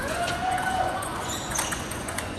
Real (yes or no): no